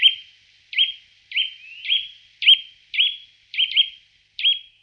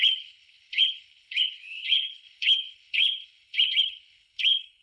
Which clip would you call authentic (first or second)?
first